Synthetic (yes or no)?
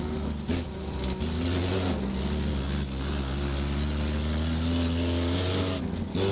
no